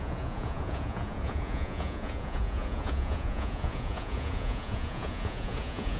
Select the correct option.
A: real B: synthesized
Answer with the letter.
B